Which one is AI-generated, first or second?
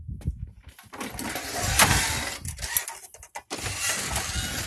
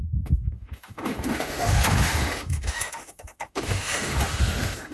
second